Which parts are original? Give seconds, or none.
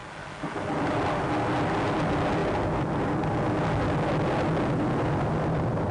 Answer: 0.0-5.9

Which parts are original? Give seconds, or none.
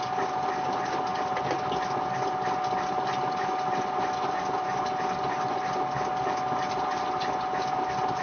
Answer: 0.0-8.2